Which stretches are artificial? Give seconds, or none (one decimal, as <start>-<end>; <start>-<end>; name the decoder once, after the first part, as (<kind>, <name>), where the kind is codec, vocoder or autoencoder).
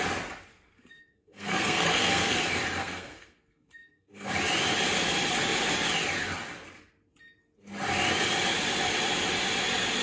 0.5-2.4 (codec, SNAC); 2.8-4.3